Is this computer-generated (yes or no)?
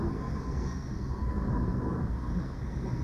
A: yes